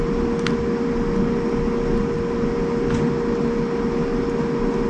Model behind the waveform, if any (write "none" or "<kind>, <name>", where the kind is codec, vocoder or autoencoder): none